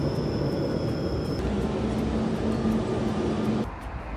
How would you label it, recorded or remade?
recorded